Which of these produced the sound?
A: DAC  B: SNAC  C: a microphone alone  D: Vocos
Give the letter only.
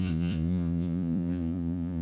D